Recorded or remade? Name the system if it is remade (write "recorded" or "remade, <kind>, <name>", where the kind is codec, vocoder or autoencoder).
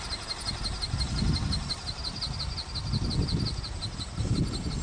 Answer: recorded